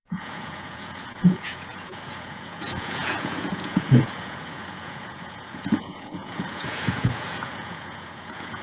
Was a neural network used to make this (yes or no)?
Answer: yes